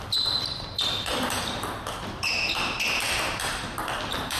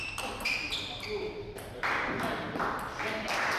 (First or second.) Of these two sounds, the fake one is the second